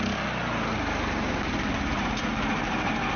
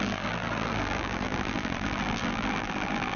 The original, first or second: first